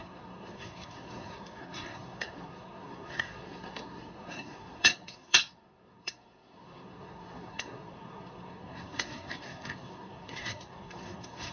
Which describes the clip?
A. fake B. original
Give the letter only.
A